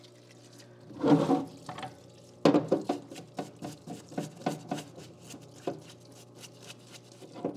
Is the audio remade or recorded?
recorded